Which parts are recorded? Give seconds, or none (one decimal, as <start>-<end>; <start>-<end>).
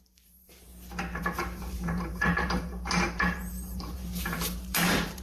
0.7-1.2